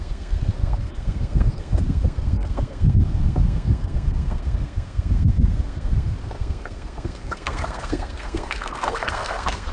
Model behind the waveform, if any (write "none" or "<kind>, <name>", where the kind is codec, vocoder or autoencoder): codec, SNAC